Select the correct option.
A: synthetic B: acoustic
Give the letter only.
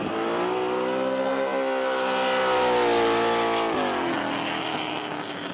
B